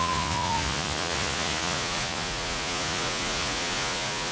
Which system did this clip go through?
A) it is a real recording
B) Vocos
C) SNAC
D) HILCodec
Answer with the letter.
B